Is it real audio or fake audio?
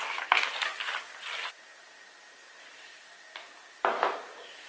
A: real